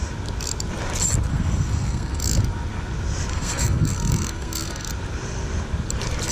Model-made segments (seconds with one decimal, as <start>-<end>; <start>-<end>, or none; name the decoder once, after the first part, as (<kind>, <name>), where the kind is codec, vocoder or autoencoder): 1.3-2.4 (codec, SNAC); 3.3-4.9